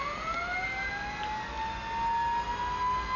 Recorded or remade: recorded